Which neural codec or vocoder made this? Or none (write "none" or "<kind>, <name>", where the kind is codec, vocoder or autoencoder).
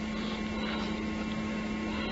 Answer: none